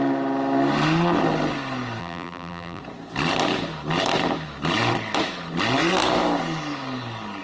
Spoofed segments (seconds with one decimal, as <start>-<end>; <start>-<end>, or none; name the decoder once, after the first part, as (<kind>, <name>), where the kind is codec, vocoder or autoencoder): 2.0-2.8 (vocoder, BigVGAN v2)